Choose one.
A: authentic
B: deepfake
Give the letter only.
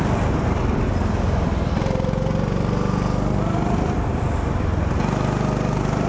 A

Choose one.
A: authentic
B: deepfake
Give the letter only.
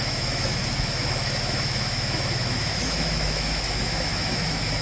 B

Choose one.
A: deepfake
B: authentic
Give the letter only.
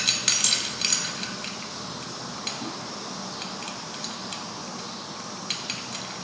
B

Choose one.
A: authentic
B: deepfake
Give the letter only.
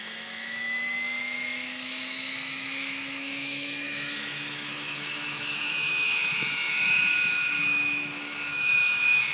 B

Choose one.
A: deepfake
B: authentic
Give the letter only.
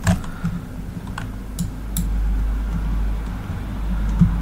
B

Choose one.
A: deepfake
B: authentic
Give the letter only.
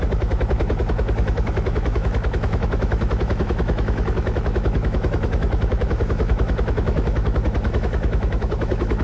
A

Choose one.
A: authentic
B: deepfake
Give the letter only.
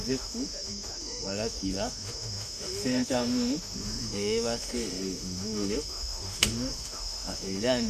B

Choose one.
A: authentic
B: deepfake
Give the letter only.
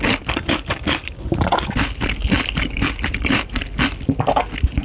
A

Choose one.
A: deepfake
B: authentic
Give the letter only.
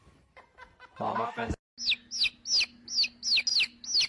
B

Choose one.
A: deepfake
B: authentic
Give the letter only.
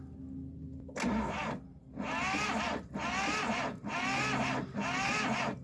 B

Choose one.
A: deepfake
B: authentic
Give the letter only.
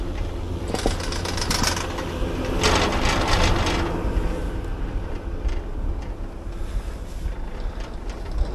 B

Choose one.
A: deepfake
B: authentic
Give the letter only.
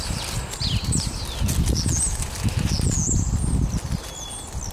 B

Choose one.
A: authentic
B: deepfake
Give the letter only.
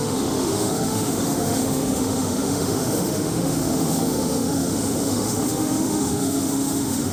B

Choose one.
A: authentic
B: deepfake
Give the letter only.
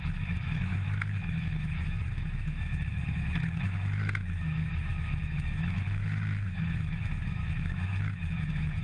B